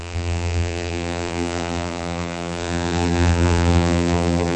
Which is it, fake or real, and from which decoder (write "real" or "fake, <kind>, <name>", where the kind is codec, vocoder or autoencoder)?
fake, vocoder, BigVGAN v2